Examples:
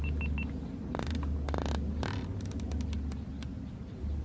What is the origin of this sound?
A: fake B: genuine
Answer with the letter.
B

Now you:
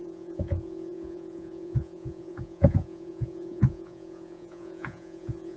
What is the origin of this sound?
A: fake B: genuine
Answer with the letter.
A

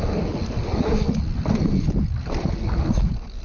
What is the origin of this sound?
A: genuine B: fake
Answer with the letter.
A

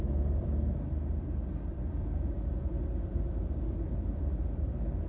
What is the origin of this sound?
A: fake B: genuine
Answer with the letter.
A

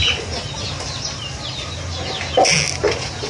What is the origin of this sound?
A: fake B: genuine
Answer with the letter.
B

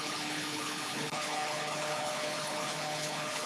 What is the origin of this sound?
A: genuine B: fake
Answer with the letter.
B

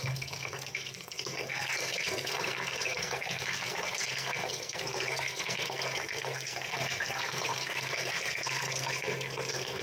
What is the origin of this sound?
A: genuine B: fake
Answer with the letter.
B